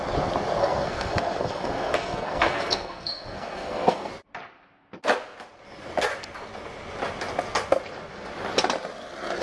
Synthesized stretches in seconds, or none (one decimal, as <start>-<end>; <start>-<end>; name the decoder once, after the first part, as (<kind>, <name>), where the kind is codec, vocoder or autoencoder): 0.6-4.1 (codec, SNAC)